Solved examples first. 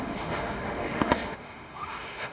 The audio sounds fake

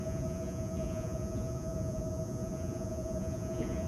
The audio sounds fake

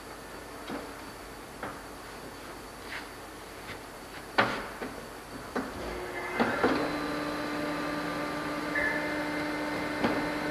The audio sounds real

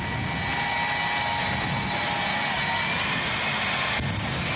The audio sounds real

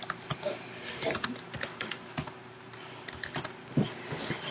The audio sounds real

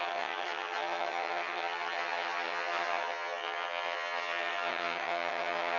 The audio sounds fake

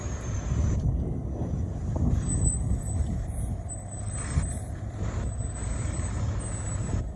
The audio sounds real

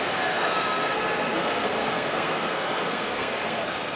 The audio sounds fake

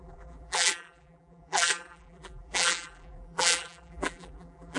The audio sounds fake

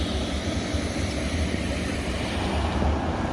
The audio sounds real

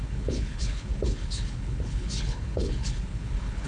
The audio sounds fake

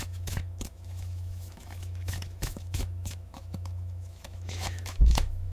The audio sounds fake